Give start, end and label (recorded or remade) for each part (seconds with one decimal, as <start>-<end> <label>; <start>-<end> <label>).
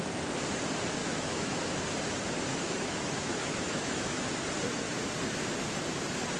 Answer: 0.0-1.0 recorded; 1.0-1.8 remade; 1.8-2.5 recorded; 2.5-4.3 remade; 4.3-6.4 recorded